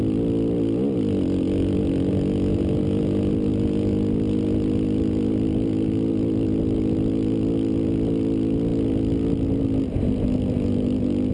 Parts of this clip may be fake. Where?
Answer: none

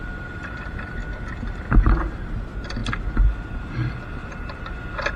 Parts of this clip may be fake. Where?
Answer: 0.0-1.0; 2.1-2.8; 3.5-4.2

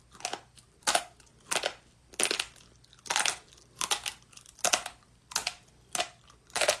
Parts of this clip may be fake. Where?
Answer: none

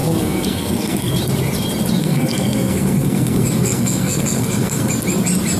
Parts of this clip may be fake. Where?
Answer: 0.0-1.2; 2.0-4.9

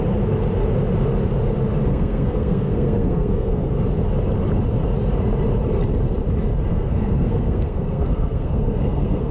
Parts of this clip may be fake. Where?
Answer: 1.9-3.7; 6.7-9.3

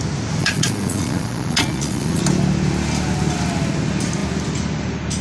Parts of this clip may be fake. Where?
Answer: 0.4-2.2